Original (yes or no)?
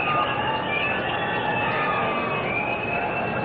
yes